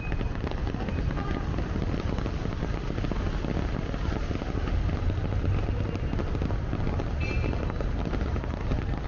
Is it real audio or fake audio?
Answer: real